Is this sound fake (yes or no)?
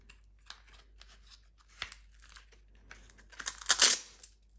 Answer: no